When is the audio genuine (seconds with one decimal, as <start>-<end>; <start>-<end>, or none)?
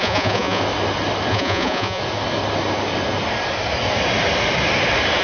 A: 0.6-1.3; 2.0-5.2